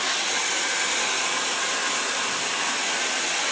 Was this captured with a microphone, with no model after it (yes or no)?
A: yes